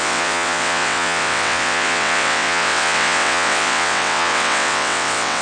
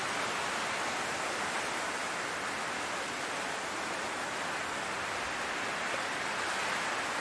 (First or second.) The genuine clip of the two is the second